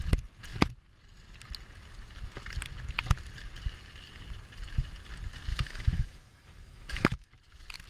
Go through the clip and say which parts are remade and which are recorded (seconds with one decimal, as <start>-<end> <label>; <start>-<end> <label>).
0.0-5.5 recorded; 5.5-7.3 remade; 7.3-7.9 recorded